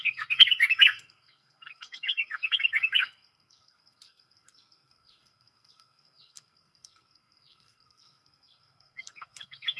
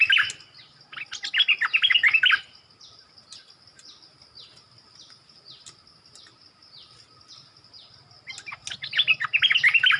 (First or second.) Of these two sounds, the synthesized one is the first